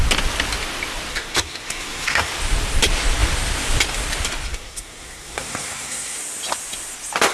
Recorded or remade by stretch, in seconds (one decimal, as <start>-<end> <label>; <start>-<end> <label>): 0.0-1.1 recorded; 1.1-2.3 remade; 2.3-4.5 recorded; 4.5-6.2 remade; 6.2-7.3 recorded